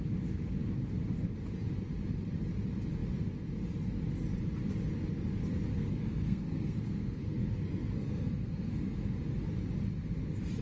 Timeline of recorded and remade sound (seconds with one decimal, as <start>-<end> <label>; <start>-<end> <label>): 0.0-5.7 recorded; 5.7-9.1 remade; 9.1-10.6 recorded